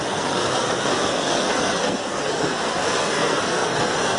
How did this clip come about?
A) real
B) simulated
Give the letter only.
B